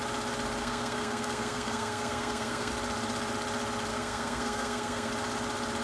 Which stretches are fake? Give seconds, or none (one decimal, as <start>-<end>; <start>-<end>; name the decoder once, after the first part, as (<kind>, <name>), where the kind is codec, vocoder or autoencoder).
0.6-2.7 (codec, SNAC); 3.9-5.1